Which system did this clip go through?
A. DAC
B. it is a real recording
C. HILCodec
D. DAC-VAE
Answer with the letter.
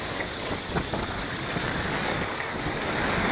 A